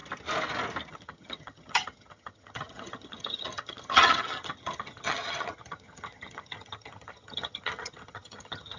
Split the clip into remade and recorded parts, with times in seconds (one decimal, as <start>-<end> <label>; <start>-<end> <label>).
0.0-0.9 recorded; 0.9-8.8 remade